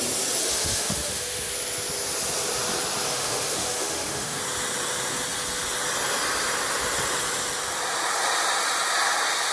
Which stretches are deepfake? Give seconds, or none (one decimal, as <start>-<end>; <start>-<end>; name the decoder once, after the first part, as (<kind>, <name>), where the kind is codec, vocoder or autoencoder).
0.4-1.5 (autoencoder, DAC-VAE); 3.1-4.4